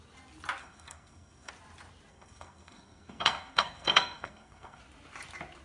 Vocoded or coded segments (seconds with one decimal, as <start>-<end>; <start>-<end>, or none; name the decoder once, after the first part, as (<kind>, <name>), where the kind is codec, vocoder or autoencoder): 0.6-1.5 (codec, SNAC); 2.1-4.8